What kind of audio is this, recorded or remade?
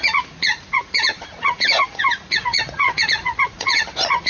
remade